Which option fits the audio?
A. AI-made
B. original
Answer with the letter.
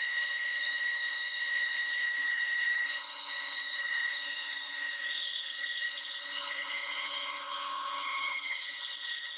A